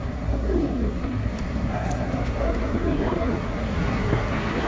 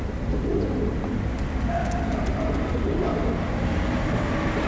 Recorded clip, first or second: second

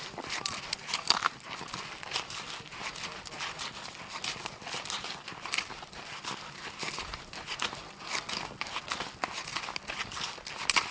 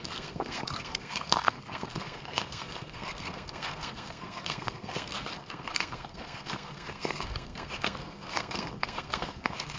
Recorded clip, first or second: first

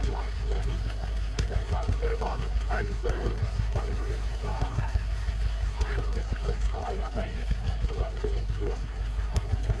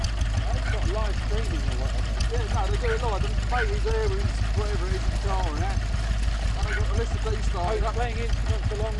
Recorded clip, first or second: second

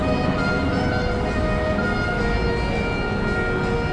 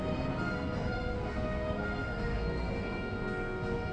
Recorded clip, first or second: first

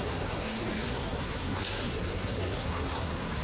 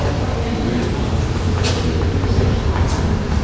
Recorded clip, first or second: second